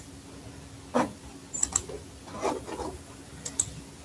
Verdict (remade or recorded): recorded